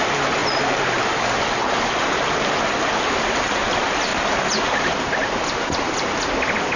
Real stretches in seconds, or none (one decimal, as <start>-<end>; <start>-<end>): 0.0-6.8